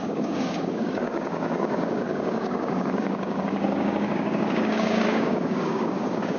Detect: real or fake fake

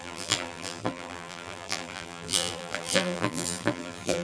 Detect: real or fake fake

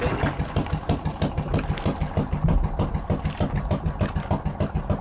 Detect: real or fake real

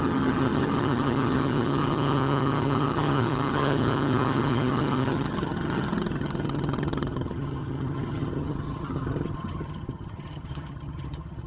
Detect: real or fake fake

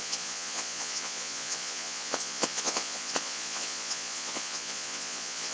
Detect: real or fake fake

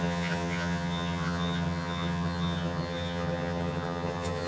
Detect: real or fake fake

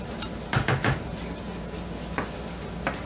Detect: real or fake real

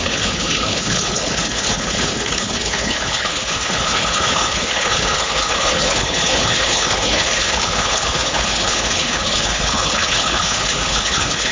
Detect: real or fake fake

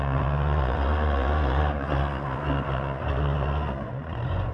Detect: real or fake fake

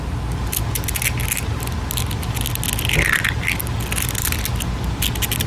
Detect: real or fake real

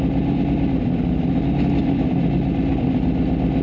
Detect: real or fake real